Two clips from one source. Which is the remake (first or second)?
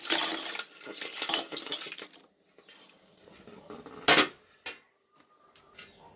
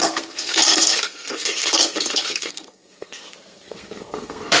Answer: second